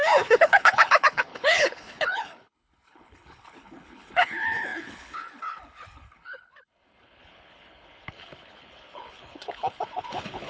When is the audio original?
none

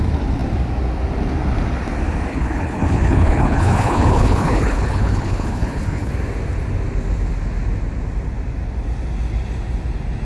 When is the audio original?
0.0-2.3; 6.1-10.2

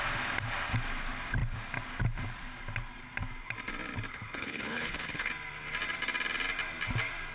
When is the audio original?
0.0-4.1; 5.3-7.3

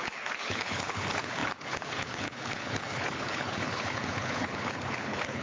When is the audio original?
none

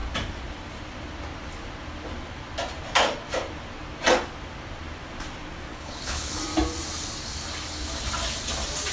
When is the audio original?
0.0-5.7; 6.4-8.9

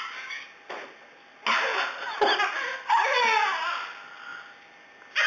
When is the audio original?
0.0-5.3

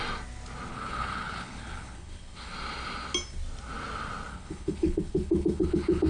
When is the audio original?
0.0-0.7; 2.5-4.3